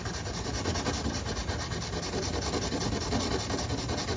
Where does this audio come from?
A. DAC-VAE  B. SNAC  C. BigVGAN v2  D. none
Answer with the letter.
D